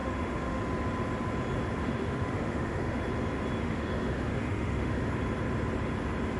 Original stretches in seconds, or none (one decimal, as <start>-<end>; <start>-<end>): 0.6-1.8; 3.0-3.6; 5.1-6.4